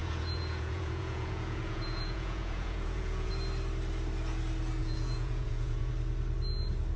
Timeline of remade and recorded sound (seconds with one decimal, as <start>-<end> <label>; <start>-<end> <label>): 0.0-3.3 remade; 3.3-4.8 recorded; 4.8-5.9 remade; 5.9-7.0 recorded